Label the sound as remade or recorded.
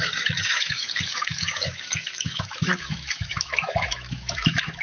remade